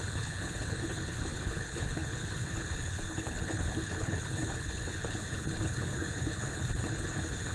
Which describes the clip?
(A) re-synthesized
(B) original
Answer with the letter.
A